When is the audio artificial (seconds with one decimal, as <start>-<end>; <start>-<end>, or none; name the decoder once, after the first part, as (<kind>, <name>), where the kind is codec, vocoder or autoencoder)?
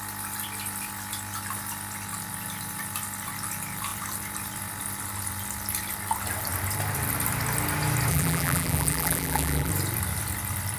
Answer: 8.1-9.7 (vocoder, BigVGAN v2)